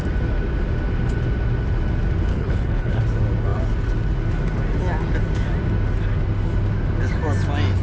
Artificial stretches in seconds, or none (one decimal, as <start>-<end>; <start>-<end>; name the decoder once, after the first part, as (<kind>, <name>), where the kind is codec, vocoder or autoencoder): 2.3-3.0 (codec, HILCodec)